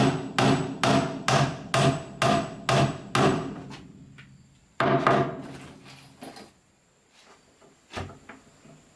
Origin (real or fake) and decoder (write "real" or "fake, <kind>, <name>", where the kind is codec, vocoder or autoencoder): real